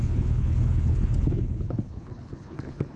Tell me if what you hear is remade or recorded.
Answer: remade